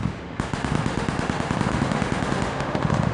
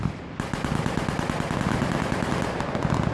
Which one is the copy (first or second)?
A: first